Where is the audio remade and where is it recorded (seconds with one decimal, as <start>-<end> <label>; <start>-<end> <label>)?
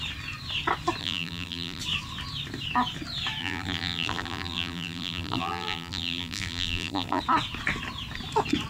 0.0-1.0 recorded; 1.0-1.8 remade; 1.8-3.4 recorded; 3.4-7.2 remade; 7.2-8.7 recorded